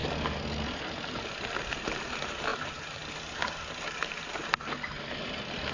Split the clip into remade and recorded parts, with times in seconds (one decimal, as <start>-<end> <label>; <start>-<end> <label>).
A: 0.0-5.7 recorded